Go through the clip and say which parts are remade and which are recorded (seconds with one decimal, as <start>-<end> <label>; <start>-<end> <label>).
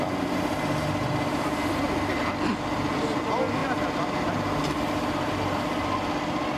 0.0-6.6 recorded